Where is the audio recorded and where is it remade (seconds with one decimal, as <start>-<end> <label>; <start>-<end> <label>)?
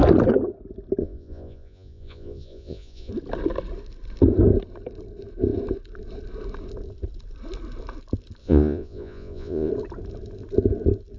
0.0-1.0 recorded; 1.0-3.1 remade; 3.1-8.4 recorded; 8.4-9.7 remade; 9.7-11.2 recorded